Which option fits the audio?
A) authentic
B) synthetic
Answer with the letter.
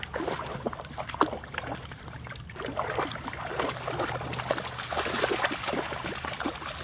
A